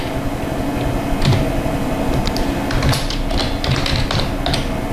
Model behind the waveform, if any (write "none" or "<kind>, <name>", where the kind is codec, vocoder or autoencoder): none